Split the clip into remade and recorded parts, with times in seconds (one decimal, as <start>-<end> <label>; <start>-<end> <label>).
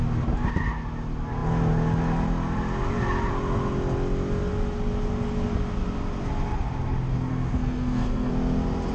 0.0-7.3 recorded; 7.3-8.3 remade; 8.3-8.9 recorded